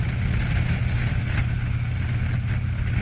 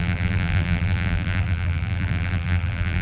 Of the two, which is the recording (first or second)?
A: first